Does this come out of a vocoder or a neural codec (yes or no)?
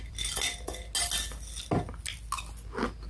no